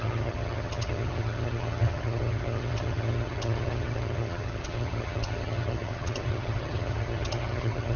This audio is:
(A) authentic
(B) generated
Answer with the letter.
B